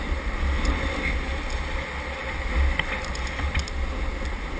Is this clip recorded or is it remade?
recorded